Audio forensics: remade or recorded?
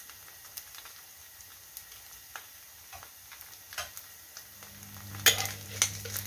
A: recorded